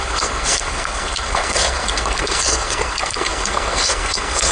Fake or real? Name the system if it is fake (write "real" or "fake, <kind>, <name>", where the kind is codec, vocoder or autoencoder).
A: fake, codec, SNAC